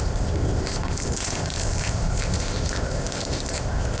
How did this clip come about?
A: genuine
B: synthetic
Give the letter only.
B